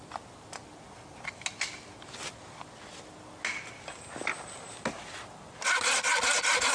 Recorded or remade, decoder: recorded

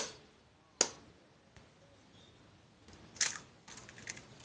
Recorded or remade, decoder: recorded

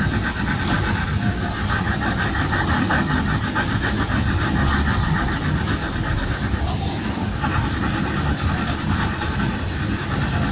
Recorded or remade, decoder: recorded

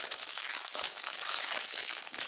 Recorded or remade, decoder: remade, autoencoder, DAC-VAE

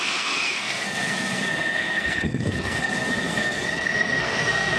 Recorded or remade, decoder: remade, codec, SNAC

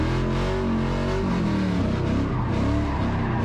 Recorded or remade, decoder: recorded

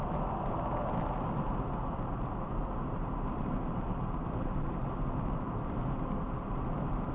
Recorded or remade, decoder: recorded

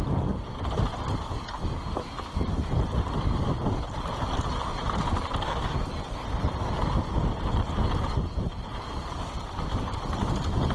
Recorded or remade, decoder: recorded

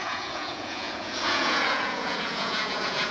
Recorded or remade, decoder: remade, vocoder, Vocos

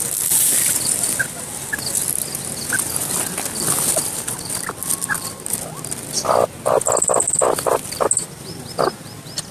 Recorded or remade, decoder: recorded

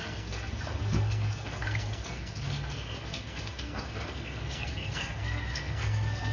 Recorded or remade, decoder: remade, codec, SNAC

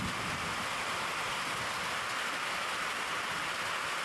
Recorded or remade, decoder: recorded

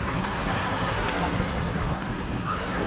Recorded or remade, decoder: remade, codec, SNAC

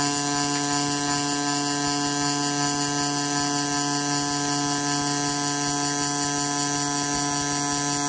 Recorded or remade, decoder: recorded